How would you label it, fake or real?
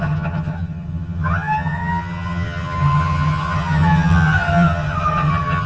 fake